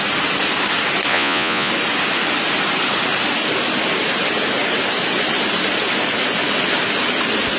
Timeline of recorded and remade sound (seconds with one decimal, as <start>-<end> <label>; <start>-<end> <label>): 0.0-1.1 recorded; 1.1-1.7 remade; 1.7-7.6 recorded